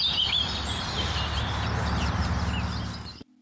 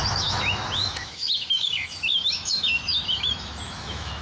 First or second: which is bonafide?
first